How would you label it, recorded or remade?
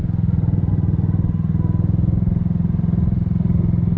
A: recorded